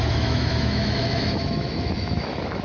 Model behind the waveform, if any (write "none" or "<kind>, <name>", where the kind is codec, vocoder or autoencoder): autoencoder, DAC-VAE